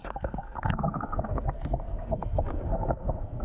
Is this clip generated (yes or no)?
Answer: yes